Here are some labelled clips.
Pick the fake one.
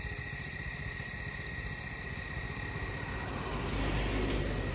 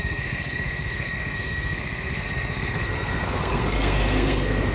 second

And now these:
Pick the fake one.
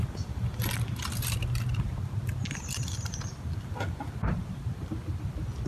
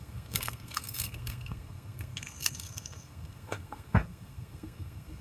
second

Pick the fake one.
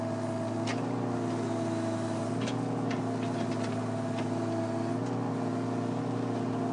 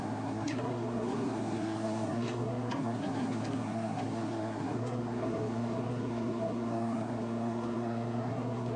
second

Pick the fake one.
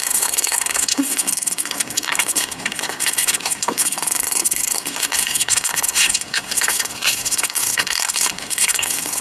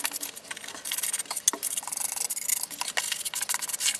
first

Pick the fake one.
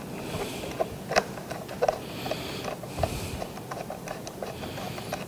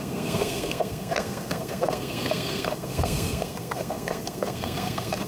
second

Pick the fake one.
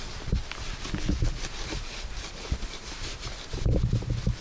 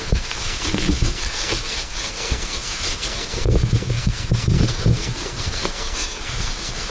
second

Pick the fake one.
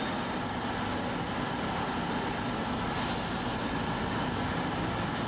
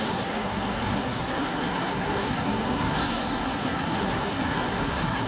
second